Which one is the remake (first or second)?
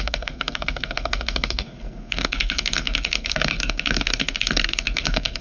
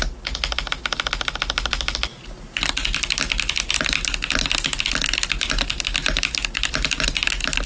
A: first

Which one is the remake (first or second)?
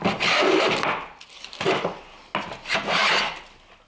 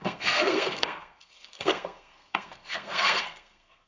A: second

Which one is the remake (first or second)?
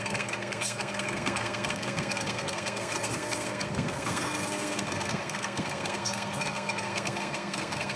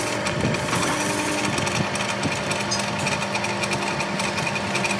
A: first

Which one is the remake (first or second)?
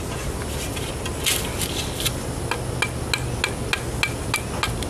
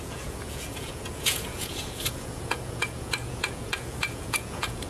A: second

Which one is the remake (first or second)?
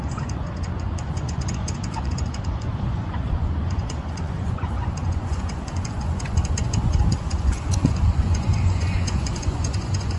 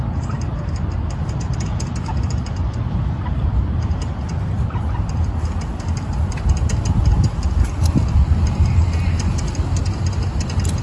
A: first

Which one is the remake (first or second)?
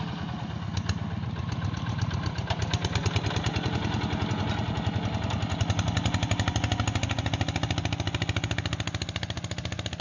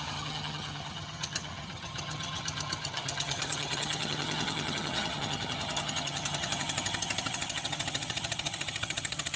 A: second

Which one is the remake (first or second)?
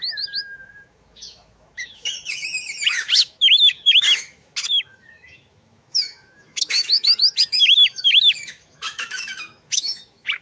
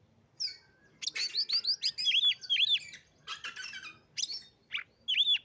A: first